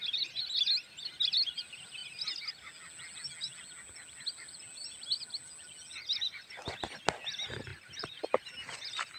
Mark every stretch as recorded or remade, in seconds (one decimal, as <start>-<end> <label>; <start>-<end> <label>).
0.0-7.7 recorded; 7.7-8.2 remade; 8.2-9.2 recorded